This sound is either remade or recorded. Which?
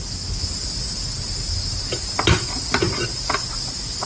recorded